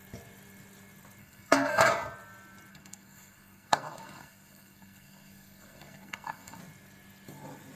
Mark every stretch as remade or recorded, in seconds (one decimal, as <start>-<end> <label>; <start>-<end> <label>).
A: 0.0-1.2 recorded; 1.2-1.9 remade; 1.9-2.7 recorded; 2.7-6.6 remade; 6.6-7.8 recorded